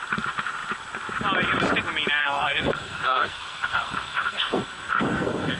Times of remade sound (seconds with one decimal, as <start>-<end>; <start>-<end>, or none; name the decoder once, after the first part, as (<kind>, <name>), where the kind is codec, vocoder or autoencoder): 2.2-5.6 (codec, SNAC)